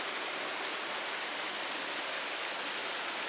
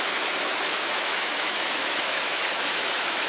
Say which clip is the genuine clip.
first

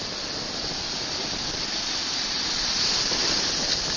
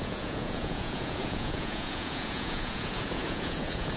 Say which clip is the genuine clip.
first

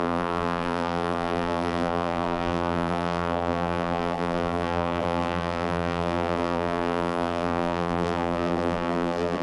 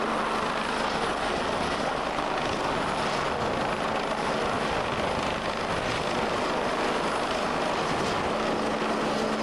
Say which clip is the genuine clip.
second